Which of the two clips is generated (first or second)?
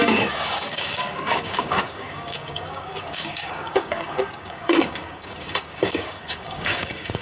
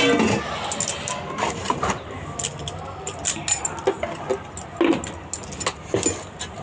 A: first